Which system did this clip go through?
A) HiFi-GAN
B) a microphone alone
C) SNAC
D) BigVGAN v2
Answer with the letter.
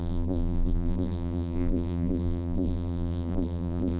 D